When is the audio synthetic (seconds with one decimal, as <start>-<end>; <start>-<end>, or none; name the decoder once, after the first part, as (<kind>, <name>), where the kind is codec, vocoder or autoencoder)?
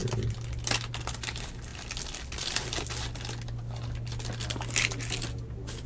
none